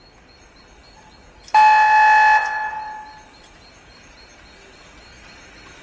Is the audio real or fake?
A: real